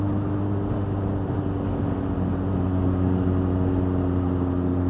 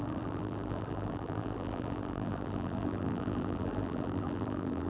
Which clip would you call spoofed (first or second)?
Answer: second